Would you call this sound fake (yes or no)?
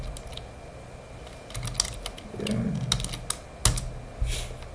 no